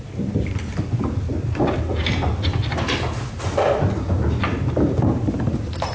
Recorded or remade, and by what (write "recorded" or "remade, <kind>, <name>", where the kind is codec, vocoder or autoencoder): recorded